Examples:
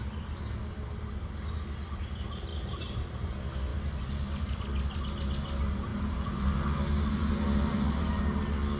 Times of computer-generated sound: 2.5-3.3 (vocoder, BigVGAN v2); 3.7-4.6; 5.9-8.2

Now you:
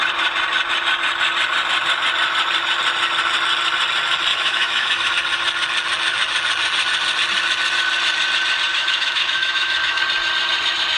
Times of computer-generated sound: 4.3-5.1 (autoencoder, DAC-VAE); 8.7-10.0

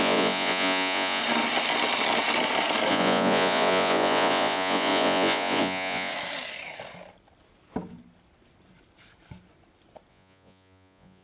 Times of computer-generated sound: 0.0-1.2 (vocoder, Vocos); 2.9-6.1; 10.1-11.2

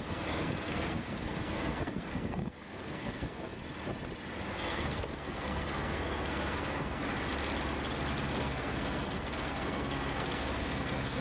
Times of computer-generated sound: 0.0-3.5 (codec, SNAC); 4.5-7.0; 8.4-11.2

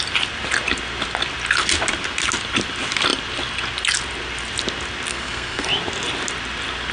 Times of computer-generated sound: 5.1-5.7 (codec, SNAC)